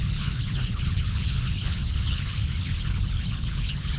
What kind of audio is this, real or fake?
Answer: fake